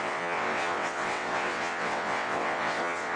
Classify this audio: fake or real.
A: fake